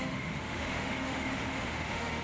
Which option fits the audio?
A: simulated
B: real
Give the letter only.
A